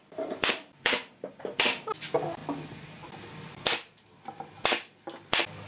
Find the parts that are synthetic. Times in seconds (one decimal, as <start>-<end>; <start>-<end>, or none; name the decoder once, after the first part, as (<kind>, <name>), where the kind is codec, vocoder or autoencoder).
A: none